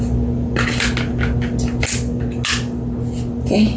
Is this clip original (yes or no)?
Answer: yes